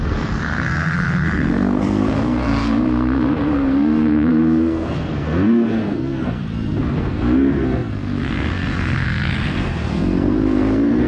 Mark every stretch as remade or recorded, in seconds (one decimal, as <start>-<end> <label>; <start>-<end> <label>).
0.0-11.1 remade